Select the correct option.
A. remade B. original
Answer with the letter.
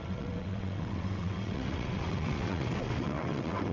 A